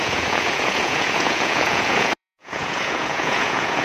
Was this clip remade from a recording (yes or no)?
yes